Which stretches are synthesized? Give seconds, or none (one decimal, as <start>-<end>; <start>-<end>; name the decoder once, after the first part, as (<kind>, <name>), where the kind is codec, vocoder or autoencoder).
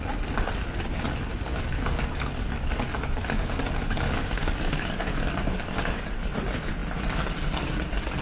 1.3-6.0 (codec, DAC)